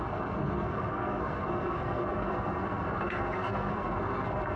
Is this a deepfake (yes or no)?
yes